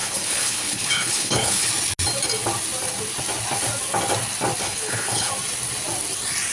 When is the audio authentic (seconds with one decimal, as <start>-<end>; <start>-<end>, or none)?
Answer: 1.7-4.6; 5.3-6.5